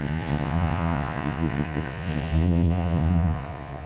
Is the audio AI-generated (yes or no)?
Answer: yes